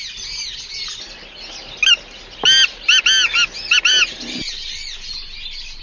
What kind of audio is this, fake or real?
real